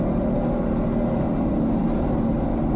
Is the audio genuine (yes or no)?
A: yes